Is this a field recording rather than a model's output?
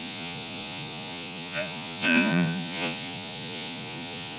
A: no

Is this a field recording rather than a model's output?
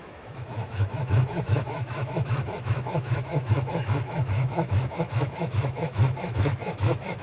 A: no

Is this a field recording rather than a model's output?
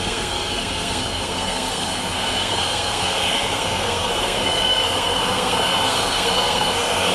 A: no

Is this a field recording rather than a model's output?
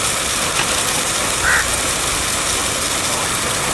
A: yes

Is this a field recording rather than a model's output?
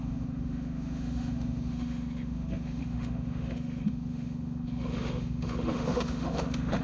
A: no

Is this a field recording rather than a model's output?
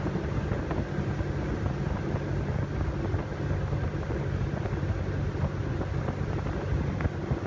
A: yes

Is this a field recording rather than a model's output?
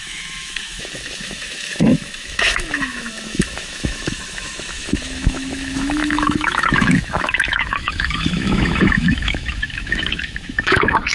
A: no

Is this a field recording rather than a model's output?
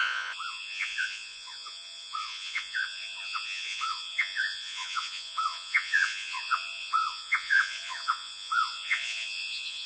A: no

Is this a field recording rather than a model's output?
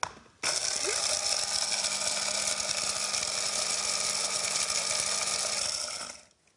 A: yes